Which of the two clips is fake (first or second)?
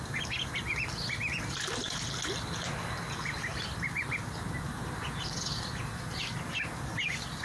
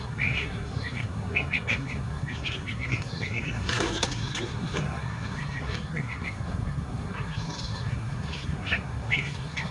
second